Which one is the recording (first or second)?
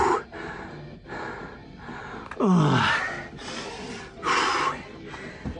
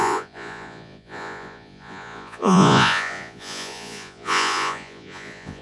first